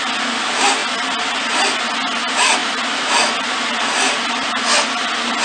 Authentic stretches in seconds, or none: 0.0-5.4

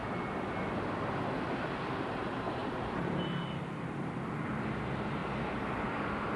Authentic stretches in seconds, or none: 0.0-2.6; 4.2-5.2